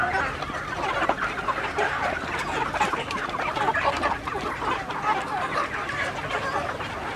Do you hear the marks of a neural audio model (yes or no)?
no